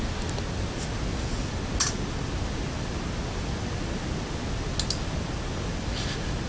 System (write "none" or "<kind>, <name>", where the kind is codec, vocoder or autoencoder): none